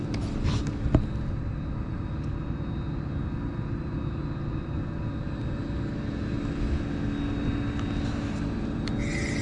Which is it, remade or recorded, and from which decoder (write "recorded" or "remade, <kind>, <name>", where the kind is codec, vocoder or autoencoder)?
recorded